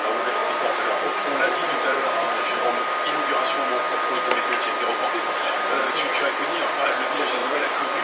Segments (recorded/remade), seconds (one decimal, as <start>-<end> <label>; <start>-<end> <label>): 0.0-0.4 recorded; 0.4-2.8 remade; 2.8-7.4 recorded; 7.4-8.0 remade